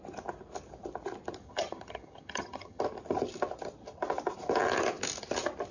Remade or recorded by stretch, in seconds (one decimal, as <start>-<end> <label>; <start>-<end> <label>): 0.0-1.4 recorded; 1.4-2.8 remade; 2.8-5.7 recorded